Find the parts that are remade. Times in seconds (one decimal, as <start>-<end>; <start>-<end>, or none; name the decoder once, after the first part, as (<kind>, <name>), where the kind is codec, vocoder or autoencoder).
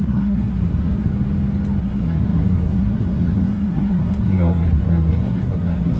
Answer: 0.0-1.1 (codec, SNAC); 1.8-6.0